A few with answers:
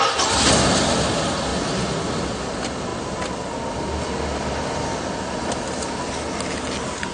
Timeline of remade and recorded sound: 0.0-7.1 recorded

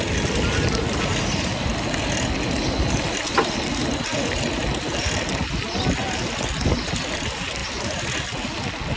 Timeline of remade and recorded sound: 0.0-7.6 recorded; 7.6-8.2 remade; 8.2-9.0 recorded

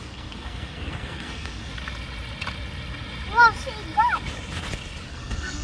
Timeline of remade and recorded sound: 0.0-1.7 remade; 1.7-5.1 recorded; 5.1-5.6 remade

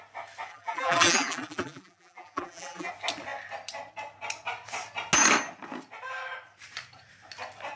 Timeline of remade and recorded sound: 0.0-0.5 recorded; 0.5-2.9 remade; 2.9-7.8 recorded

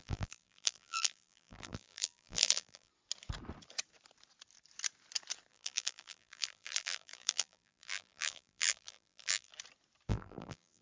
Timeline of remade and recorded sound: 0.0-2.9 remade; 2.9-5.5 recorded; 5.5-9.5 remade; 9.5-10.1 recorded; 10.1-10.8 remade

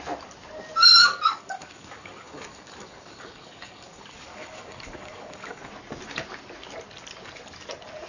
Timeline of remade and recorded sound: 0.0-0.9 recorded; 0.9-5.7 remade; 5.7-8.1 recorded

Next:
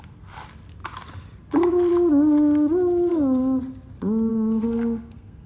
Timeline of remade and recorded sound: 0.0-0.4 remade; 0.4-3.1 recorded; 3.1-3.6 remade; 3.6-4.3 recorded; 4.3-5.5 remade

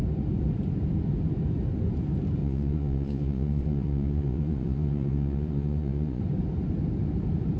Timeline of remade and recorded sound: 0.0-2.4 recorded; 2.4-6.2 remade; 6.2-7.6 recorded